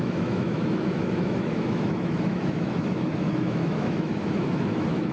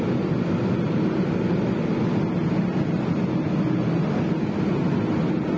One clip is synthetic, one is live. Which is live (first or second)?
second